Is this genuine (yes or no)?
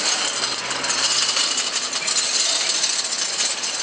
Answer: yes